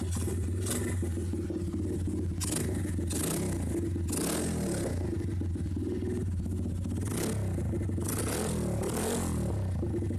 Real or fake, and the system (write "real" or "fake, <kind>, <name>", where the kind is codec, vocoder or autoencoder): real